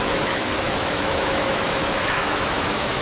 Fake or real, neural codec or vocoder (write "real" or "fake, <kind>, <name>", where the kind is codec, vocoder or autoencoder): fake, autoencoder, DAC-VAE